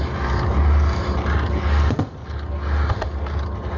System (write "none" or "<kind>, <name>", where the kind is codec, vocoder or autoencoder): none